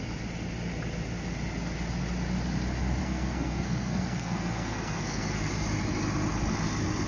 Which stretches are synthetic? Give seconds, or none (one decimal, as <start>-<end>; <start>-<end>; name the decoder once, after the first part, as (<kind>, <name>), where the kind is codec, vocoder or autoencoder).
3.0-5.5 (codec, SNAC)